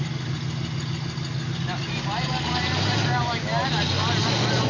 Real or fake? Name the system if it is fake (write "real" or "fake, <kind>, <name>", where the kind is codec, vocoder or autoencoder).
real